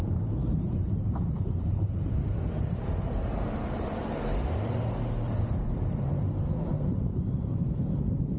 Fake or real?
fake